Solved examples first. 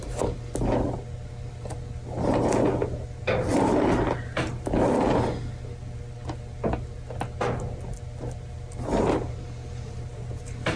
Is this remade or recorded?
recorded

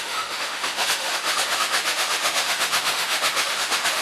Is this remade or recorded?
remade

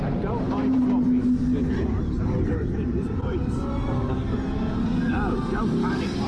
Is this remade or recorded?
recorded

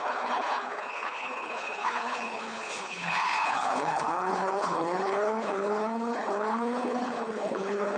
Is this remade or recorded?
remade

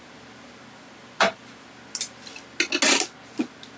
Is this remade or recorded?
recorded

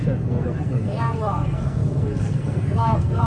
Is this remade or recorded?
remade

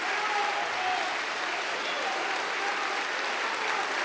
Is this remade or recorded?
recorded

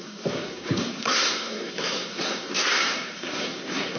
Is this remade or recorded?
remade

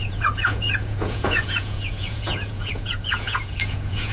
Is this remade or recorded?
remade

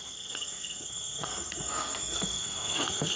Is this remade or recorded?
remade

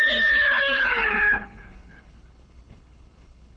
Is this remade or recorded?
remade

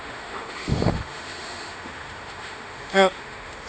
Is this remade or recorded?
remade